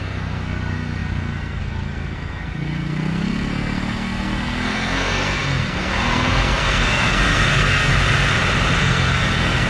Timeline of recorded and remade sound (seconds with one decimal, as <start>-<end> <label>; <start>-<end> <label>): 0.0-7.9 remade; 7.9-8.8 recorded; 8.8-9.7 remade